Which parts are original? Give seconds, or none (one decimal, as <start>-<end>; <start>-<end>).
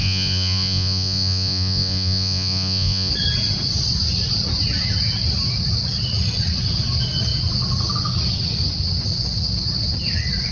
3.1-10.5